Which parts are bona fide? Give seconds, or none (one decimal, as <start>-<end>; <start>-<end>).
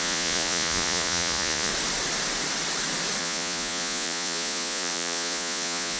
1.7-3.2